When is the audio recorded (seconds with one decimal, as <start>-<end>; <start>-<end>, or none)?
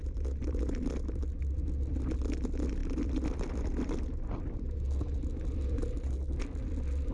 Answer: 0.0-7.1